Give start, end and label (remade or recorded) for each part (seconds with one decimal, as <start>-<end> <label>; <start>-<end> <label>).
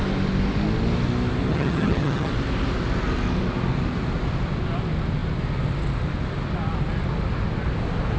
0.0-1.5 recorded; 1.5-2.3 remade; 2.3-8.2 recorded